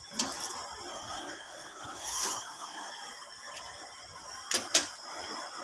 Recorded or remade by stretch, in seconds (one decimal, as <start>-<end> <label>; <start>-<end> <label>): 0.0-0.9 recorded; 0.9-2.9 remade; 2.9-5.6 recorded